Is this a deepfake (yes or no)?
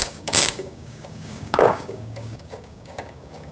yes